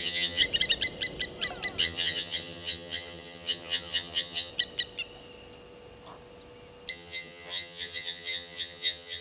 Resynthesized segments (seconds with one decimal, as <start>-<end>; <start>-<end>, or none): 0.0-0.4; 1.8-4.5; 6.9-9.2